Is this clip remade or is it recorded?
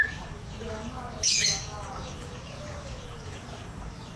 remade